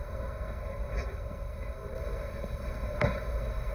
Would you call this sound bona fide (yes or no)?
no